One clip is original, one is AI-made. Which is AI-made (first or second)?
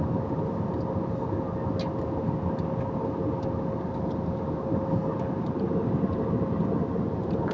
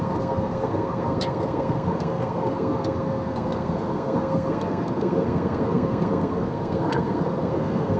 second